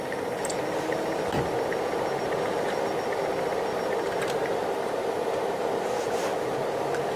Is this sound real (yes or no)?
yes